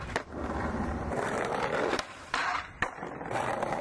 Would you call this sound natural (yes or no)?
no